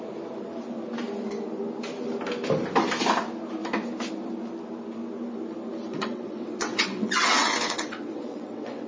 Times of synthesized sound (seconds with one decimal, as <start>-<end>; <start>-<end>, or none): 5.9-8.9